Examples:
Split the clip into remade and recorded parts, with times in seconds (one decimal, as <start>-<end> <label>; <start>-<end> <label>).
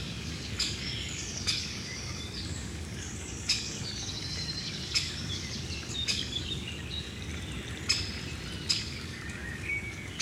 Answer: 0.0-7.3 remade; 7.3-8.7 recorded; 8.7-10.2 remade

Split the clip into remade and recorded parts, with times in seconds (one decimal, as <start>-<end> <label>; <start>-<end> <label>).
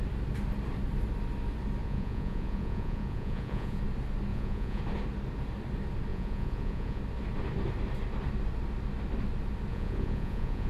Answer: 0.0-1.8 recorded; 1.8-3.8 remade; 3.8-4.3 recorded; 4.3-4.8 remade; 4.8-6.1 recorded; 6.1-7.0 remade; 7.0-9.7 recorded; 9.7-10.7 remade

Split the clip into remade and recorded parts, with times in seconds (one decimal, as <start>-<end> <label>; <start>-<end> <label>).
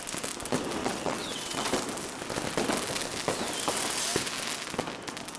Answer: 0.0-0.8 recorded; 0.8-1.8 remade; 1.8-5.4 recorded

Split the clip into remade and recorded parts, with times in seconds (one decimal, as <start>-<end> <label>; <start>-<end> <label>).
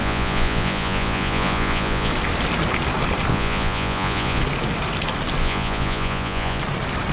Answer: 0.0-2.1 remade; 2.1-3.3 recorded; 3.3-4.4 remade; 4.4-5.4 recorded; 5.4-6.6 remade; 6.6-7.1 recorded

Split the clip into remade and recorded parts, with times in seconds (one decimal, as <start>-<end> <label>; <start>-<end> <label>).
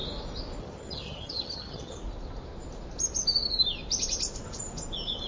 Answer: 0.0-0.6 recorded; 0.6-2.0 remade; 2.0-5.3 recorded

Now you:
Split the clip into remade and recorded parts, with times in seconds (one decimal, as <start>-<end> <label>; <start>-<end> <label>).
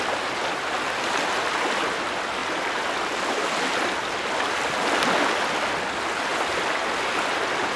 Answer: 0.0-7.8 recorded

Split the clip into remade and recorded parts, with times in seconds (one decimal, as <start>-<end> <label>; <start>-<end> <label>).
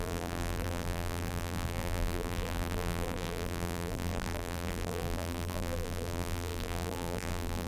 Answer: 0.0-7.7 remade